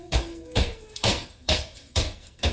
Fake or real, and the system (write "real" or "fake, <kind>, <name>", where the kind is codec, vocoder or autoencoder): fake, codec, SNAC